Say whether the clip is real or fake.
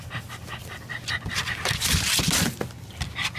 real